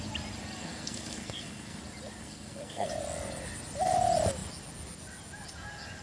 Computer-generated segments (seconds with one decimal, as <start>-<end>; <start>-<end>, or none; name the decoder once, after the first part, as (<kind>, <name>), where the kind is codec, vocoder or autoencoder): 0.6-1.8 (codec, SNAC); 2.2-2.9